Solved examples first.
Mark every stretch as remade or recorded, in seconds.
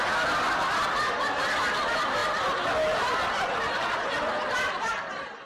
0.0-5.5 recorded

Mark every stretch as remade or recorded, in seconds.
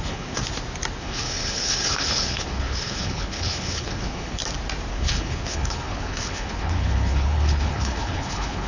0.0-0.4 remade; 0.4-1.0 recorded; 1.0-4.4 remade; 4.4-4.9 recorded; 4.9-8.7 remade